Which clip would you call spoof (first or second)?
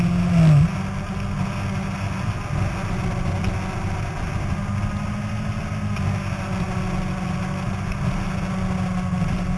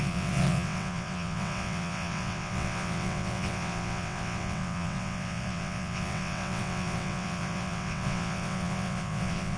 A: second